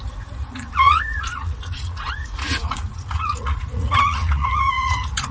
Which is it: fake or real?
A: fake